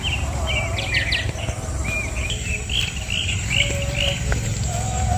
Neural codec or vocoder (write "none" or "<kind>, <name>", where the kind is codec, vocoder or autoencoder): none